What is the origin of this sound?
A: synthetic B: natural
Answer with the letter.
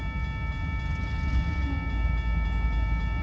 B